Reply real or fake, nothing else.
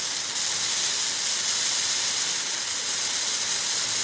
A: real